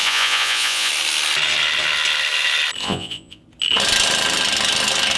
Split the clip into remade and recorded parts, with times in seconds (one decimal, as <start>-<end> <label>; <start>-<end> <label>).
0.0-0.9 remade; 0.9-2.8 recorded; 2.8-3.4 remade; 3.4-5.2 recorded